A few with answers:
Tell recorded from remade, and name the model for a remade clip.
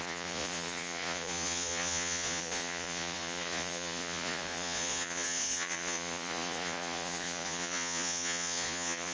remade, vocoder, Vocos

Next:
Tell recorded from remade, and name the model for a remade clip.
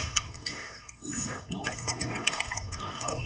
remade, codec, SNAC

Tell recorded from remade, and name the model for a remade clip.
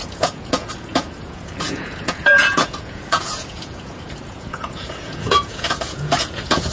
remade, vocoder, Vocos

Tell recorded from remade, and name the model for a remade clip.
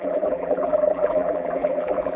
remade, vocoder, BigVGAN v2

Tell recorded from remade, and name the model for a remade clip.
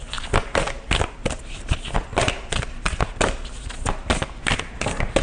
recorded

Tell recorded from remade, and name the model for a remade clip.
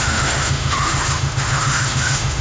remade, autoencoder, DAC-VAE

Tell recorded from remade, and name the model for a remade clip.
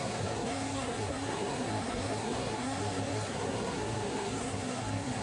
remade, codec, SNAC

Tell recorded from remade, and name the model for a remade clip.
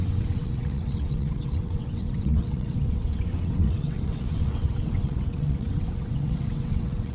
remade, vocoder, WaveNeXt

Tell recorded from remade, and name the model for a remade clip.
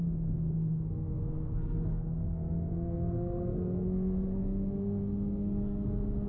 remade, codec, SNAC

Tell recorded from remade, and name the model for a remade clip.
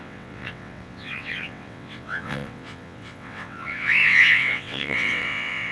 remade, vocoder, WaveNeXt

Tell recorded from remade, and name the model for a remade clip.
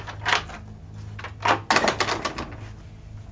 recorded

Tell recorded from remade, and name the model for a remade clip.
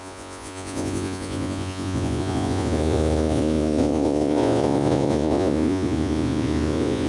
remade, vocoder, Vocos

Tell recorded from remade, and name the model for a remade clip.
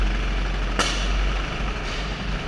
recorded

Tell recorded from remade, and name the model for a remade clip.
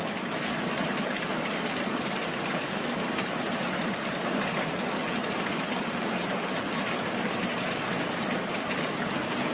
remade, vocoder, BigVGAN v2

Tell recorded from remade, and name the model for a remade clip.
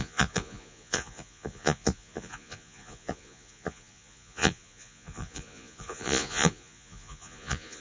remade, vocoder, Vocos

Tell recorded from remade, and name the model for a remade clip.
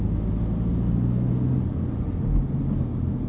recorded